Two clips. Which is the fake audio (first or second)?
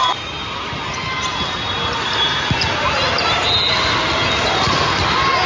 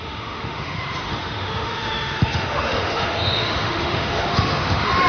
second